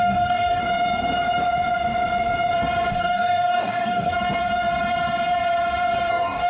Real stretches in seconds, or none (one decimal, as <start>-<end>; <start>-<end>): 0.6-2.9; 4.1-6.1